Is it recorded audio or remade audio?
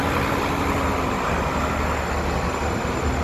recorded